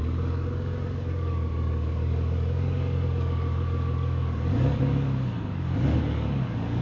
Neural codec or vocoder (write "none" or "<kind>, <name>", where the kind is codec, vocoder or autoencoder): codec, DAC